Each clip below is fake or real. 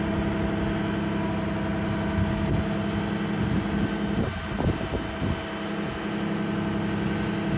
real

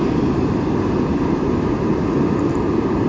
real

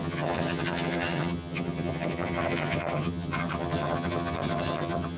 fake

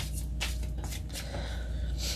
real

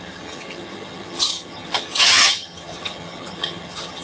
fake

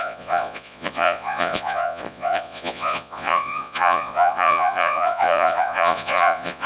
fake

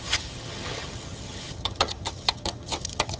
fake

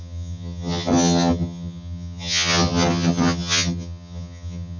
fake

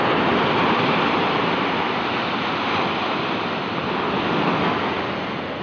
real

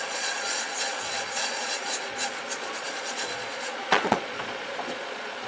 fake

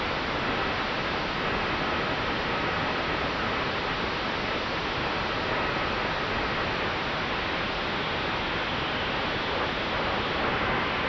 real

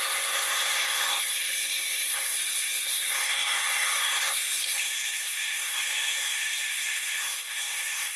fake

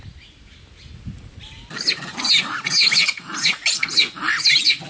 real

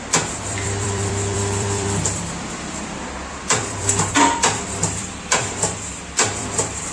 fake